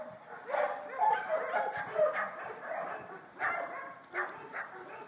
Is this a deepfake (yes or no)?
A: yes